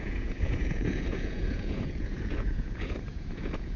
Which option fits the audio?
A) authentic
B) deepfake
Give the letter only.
B